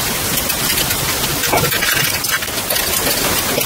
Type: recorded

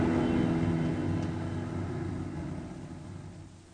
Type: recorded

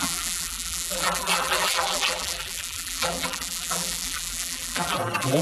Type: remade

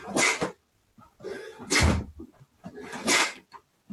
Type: recorded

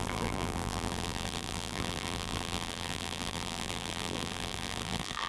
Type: remade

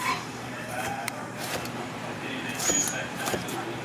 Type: remade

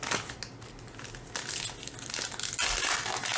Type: recorded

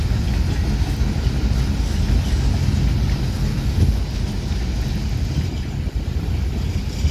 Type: recorded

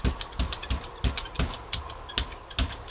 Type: recorded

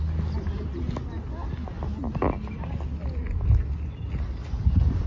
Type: recorded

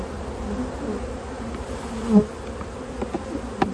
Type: recorded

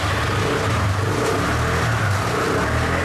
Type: recorded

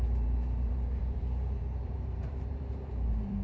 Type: remade